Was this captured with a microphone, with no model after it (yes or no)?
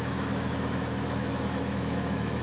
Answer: no